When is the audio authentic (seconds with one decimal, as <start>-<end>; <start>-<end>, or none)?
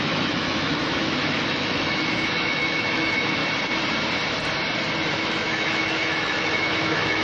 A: 3.4-5.1